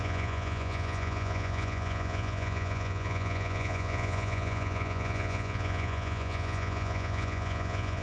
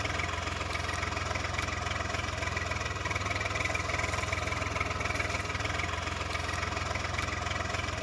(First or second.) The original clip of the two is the second